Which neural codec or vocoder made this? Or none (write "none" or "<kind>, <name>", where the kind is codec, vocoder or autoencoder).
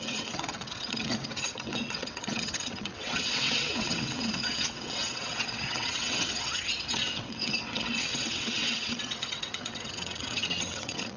vocoder, WaveNeXt